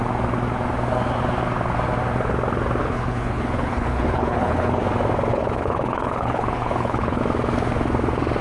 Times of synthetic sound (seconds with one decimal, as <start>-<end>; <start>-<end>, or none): 2.8-4.8; 5.3-7.2